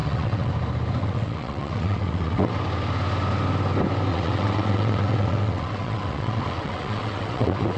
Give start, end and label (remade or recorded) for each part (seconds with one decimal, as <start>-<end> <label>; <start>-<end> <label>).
0.0-0.5 remade; 0.5-1.0 recorded; 1.0-2.5 remade; 2.5-4.1 recorded; 4.1-7.8 remade